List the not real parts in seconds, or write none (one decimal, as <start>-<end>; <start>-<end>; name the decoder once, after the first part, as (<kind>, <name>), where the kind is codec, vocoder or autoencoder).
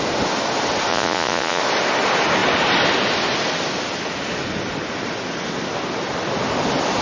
0.9-1.6 (vocoder, Vocos)